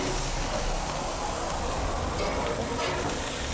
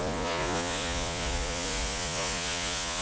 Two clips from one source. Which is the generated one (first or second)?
second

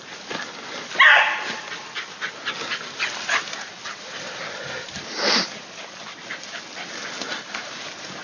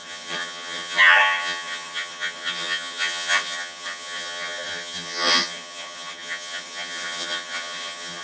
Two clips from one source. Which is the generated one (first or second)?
second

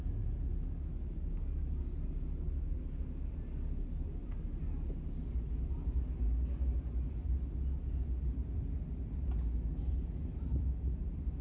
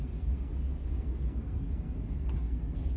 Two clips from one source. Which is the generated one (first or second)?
second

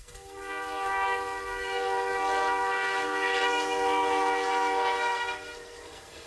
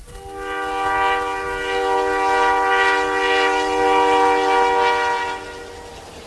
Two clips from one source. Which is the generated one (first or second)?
first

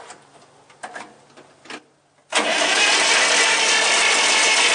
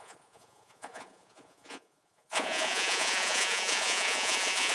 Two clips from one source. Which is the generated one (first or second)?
second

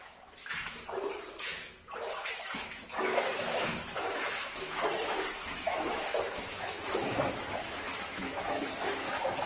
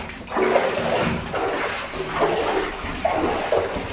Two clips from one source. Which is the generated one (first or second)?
first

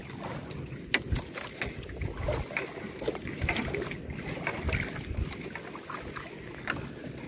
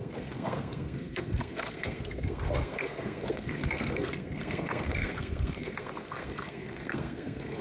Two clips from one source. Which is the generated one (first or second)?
second